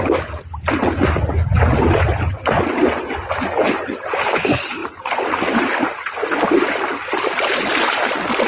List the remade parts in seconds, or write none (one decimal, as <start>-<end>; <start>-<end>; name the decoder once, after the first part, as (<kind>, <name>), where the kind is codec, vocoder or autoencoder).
none